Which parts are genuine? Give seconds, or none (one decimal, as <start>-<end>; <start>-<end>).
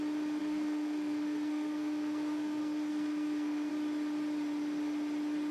0.0-0.4; 3.7-5.5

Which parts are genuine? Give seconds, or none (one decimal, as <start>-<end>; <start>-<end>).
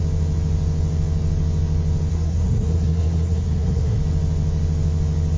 0.0-2.1; 4.0-5.4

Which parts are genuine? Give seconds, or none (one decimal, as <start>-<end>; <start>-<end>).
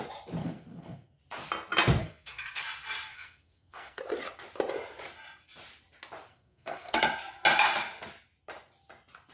0.0-0.4; 1.2-2.0; 2.6-3.1; 4.0-6.3; 7.0-9.3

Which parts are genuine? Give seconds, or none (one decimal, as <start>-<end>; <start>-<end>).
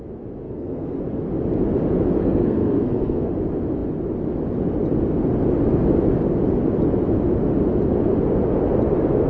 0.0-0.4; 1.0-2.2; 3.3-9.3